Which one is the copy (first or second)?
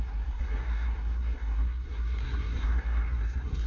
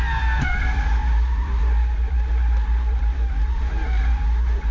first